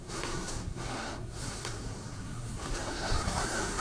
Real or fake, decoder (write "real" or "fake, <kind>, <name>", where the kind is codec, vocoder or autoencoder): fake, codec, SNAC